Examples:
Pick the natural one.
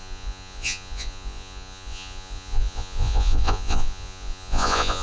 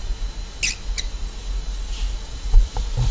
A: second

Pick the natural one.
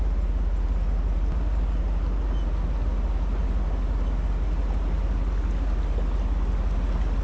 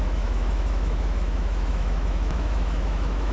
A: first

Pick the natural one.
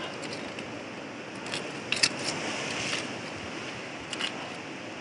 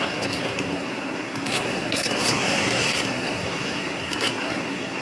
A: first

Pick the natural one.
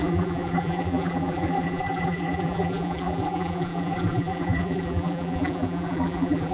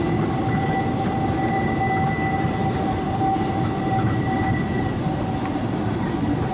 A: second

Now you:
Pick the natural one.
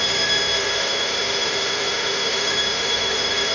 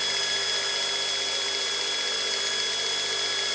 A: second